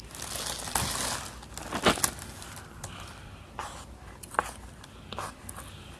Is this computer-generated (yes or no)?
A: no